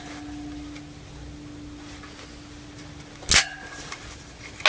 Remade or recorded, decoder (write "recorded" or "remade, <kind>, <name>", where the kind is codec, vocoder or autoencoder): recorded